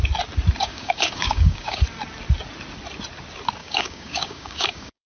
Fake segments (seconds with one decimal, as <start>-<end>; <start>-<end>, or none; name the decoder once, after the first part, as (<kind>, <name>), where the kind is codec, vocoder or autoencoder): 0.6-1.8 (codec, DAC); 3.6-5.1